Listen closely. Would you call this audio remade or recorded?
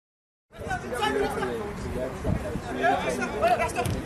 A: recorded